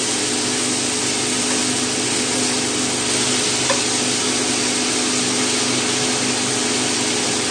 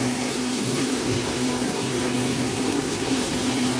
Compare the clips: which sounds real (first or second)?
first